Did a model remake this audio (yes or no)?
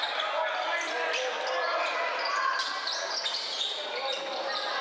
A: no